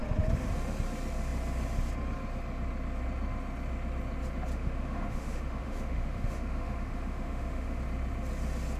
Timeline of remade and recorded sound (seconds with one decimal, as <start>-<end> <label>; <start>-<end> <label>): 0.0-4.5 recorded; 4.5-7.8 remade; 7.8-8.8 recorded